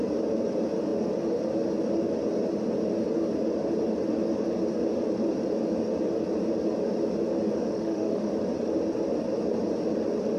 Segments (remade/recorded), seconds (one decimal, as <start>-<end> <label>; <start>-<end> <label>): 0.0-7.7 recorded; 7.7-8.3 remade; 8.3-10.4 recorded